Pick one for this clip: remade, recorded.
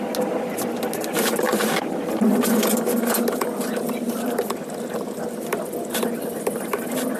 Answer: recorded